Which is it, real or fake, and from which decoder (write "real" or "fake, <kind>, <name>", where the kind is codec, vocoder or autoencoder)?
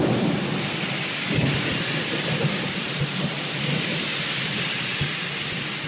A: real